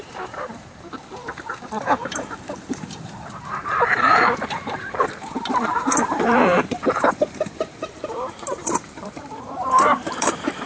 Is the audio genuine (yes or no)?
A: no